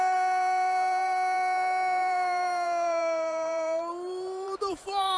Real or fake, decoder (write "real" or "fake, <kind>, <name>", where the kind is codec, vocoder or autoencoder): fake, vocoder, BigVGAN v2